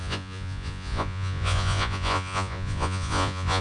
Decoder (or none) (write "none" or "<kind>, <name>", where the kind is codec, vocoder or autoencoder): vocoder, Vocos